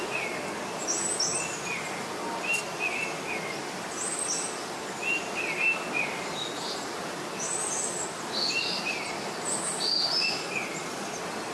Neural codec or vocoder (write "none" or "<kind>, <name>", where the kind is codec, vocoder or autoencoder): none